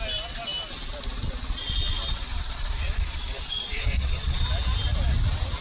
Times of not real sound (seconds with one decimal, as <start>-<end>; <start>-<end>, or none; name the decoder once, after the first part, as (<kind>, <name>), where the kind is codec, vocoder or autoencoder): 2.3-4.4 (vocoder, Vocos)

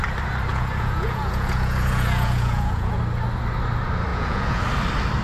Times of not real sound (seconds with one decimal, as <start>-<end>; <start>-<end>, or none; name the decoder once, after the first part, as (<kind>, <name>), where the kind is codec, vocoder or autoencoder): 0.5-3.0 (vocoder, Vocos); 4.1-4.6

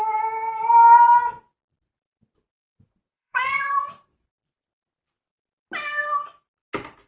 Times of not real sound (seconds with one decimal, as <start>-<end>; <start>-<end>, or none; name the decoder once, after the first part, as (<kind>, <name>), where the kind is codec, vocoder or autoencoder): 2.6-4.4 (vocoder, Vocos)

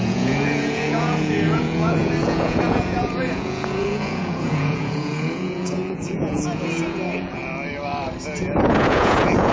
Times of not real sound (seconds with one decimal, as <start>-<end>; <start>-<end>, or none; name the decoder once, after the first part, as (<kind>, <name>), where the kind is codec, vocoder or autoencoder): 0.0-7.4 (vocoder, Vocos); 8.6-9.5